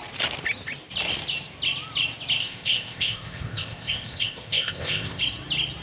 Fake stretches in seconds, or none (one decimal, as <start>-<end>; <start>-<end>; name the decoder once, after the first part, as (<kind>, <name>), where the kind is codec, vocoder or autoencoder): 2.4-5.2 (codec, ZipCodec)